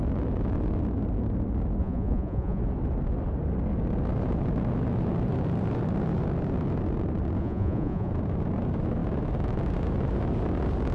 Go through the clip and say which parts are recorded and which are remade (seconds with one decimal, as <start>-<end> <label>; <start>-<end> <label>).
0.0-1.8 recorded; 1.8-2.6 remade; 2.6-7.4 recorded; 7.4-8.1 remade; 8.1-10.9 recorded

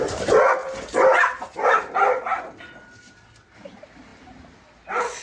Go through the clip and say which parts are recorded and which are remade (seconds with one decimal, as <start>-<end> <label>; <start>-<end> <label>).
0.0-5.2 recorded

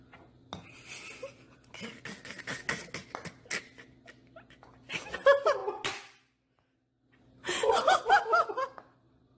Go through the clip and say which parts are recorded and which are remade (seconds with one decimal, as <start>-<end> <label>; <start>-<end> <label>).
0.0-9.4 recorded

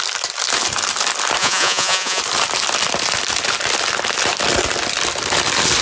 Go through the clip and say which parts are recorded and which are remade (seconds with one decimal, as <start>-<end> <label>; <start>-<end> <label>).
0.0-1.4 recorded; 1.4-2.2 remade; 2.2-5.8 recorded

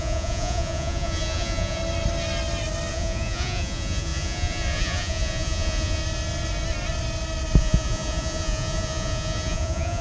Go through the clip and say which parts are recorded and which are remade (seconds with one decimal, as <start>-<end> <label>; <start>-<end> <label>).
0.0-1.8 remade; 1.8-2.9 recorded; 2.9-6.0 remade; 6.0-7.6 recorded; 7.6-10.0 remade

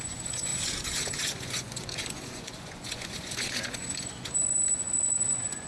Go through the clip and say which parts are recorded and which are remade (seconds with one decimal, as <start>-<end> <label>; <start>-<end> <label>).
0.0-5.7 remade

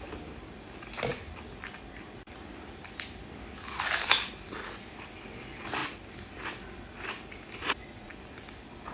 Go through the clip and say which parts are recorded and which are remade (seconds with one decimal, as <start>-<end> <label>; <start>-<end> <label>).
0.0-7.6 recorded; 7.6-8.1 remade; 8.1-8.9 recorded